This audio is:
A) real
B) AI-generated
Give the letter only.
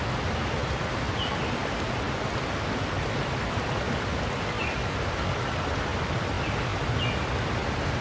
A